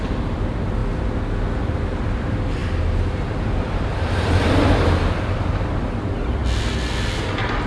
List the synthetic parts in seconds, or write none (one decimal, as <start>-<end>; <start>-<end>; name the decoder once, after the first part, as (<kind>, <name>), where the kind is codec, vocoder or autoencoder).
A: 0.0-0.8 (vocoder, BigVGAN v2); 2.0-6.4; 7.1-7.7